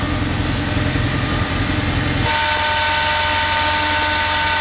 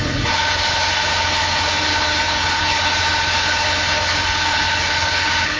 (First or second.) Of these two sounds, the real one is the first